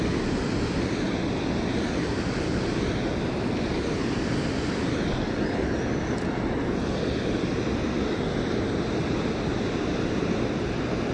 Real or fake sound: real